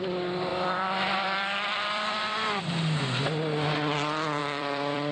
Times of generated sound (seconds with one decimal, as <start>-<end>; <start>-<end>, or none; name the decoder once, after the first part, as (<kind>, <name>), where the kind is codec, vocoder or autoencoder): 0.5-2.7 (vocoder, BigVGAN v2); 4.4-5.1